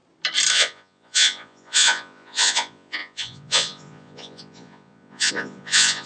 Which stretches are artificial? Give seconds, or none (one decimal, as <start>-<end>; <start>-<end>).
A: 0.5-6.1